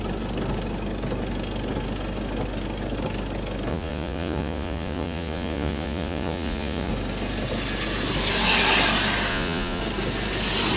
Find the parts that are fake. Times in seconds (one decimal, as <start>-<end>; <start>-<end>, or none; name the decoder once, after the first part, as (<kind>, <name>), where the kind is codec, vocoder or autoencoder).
3.7-6.9 (vocoder, Vocos); 9.3-9.8